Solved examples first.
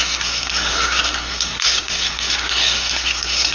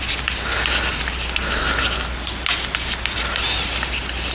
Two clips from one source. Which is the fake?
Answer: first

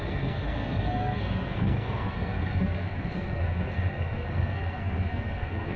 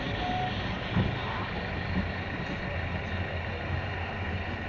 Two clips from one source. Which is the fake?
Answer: first